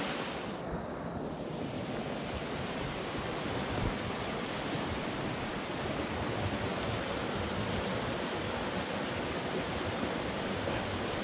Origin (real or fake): real